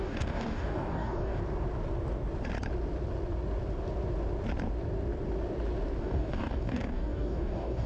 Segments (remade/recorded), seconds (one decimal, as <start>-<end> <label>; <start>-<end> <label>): 0.0-1.4 remade; 1.4-6.0 recorded; 6.0-7.9 remade